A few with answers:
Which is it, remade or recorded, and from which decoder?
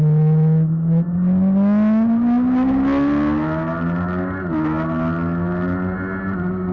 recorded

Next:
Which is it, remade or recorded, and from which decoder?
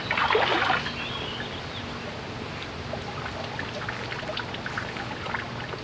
recorded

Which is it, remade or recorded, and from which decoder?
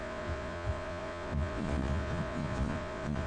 remade, vocoder, Vocos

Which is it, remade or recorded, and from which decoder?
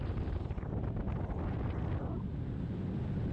recorded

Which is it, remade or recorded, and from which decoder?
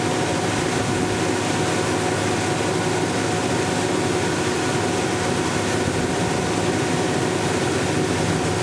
recorded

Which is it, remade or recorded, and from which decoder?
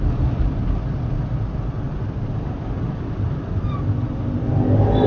recorded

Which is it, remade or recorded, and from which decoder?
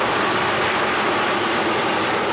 remade, vocoder, BigVGAN v2